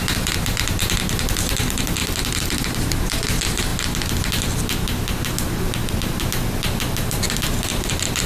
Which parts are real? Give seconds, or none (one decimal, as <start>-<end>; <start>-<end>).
2.0-2.6; 3.7-5.9